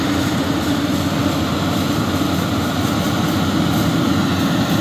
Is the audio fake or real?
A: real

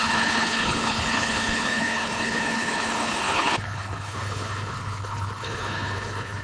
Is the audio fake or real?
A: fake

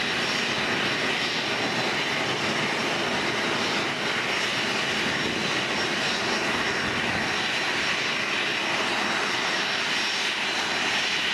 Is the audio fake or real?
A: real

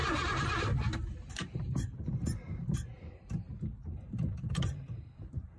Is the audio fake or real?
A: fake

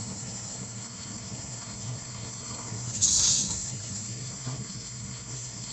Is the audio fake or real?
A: fake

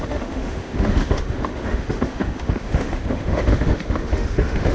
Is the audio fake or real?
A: fake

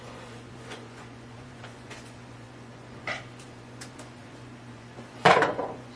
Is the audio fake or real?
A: fake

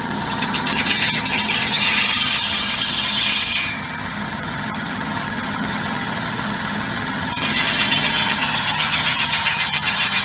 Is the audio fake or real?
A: fake